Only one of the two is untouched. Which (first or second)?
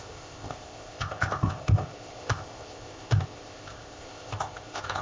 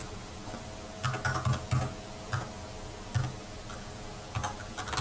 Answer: second